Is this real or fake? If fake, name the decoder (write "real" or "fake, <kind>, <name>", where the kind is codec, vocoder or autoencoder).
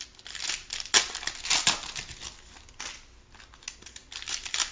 real